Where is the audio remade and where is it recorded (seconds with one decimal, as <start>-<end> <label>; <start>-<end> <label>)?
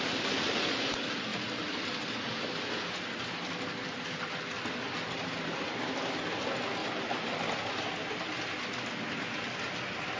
0.0-6.8 recorded; 6.8-7.4 remade; 7.4-10.2 recorded